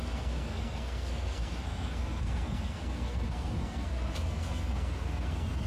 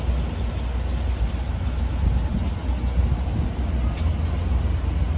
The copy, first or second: first